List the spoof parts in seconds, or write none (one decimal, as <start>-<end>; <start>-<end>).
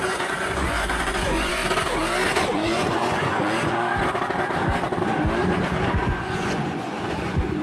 0.0-1.6; 2.5-3.9; 5.9-7.6